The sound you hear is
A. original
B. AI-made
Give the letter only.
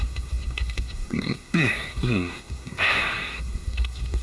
B